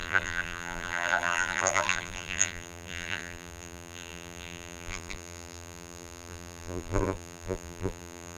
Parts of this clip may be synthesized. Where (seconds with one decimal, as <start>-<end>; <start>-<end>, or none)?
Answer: 0.0-8.4